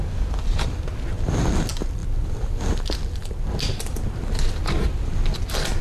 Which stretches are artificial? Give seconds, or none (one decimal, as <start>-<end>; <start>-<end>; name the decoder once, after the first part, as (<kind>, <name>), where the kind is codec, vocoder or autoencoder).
none